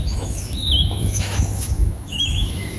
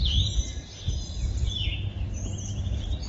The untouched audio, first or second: second